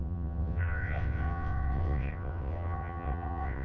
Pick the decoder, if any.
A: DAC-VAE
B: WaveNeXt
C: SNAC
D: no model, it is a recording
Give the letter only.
B